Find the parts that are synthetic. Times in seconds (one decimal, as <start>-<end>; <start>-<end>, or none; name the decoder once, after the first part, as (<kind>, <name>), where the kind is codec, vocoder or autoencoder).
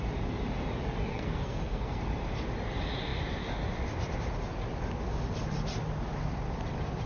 1.1-2.0 (codec, SNAC)